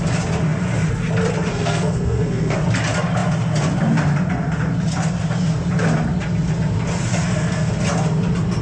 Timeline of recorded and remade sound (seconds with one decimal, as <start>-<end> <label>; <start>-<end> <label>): 0.0-1.5 recorded; 1.5-2.6 remade; 2.6-7.1 recorded; 7.1-7.7 remade; 7.7-8.6 recorded